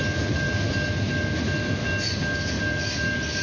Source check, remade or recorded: recorded